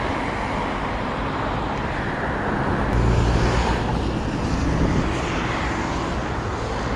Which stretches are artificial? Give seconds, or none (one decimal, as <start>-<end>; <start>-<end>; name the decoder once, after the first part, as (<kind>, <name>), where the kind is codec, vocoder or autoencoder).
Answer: none